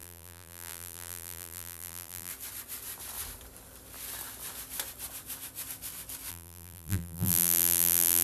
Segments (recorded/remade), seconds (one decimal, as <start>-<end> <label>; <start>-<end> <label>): 0.0-2.3 remade; 2.3-6.3 recorded; 6.3-8.2 remade